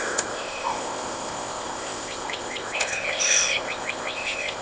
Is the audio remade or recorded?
remade